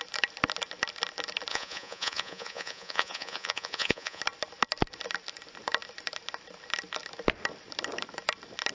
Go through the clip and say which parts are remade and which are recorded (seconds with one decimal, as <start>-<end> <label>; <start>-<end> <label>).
0.0-1.5 recorded; 1.5-4.2 remade; 4.2-8.7 recorded